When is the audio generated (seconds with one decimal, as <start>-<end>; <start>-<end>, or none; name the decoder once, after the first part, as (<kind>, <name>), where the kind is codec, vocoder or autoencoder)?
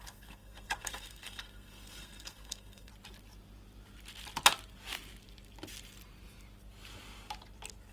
0.0-2.9 (codec, SNAC)